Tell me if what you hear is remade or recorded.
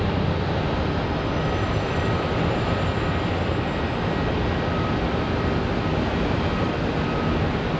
recorded